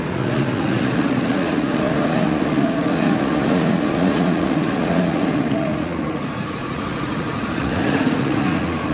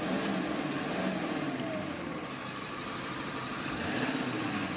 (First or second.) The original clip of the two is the second